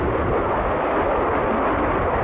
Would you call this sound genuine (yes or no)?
yes